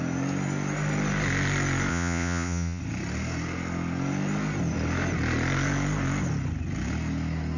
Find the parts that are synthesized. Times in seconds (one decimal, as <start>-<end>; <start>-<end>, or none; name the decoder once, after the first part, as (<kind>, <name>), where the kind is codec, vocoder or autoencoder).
1.9-2.8 (vocoder, Vocos)